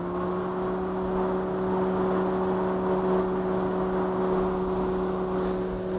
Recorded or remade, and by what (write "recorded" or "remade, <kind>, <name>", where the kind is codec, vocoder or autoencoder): recorded